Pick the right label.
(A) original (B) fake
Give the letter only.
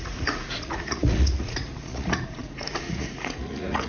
B